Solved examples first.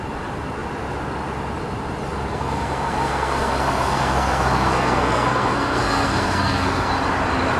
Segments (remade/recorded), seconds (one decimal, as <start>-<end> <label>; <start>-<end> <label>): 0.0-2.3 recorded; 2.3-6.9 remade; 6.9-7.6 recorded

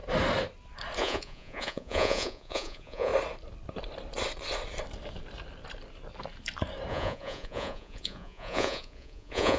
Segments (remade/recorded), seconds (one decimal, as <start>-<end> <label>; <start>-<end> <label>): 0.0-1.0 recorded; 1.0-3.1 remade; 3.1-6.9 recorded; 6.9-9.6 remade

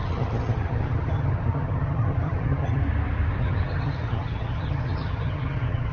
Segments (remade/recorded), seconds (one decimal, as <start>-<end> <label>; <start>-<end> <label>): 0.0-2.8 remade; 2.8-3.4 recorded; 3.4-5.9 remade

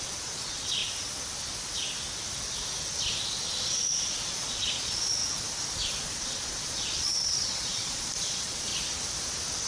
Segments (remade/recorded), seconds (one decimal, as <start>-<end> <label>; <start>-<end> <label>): 0.0-0.8 remade; 0.8-3.7 recorded; 3.7-5.2 remade; 5.2-6.0 recorded; 6.0-8.7 remade; 8.7-9.7 recorded